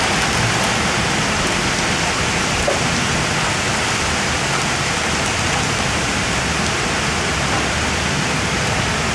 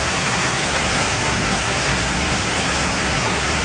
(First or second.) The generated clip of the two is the second